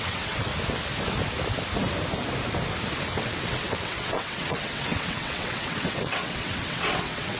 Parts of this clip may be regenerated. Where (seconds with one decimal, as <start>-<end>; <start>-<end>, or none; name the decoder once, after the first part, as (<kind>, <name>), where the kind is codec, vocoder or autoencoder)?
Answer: 0.0-0.5 (vocoder, WaveNeXt); 3.2-7.4